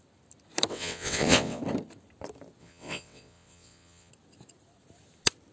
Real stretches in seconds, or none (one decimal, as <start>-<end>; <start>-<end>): 0.0-0.7; 1.6-2.6; 4.1-5.5